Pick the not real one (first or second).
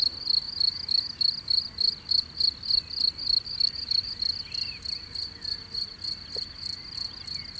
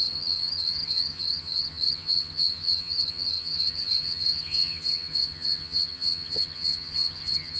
second